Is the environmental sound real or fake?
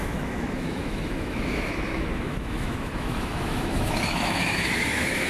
fake